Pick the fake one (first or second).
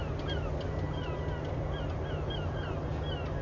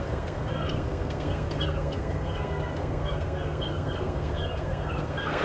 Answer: second